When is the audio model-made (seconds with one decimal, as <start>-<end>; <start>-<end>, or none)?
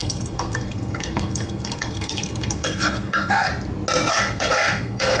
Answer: 0.0-3.5; 4.1-5.2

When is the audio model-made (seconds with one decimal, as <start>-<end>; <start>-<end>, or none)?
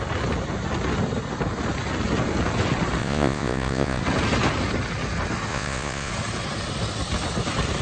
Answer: 3.0-4.0; 5.5-6.1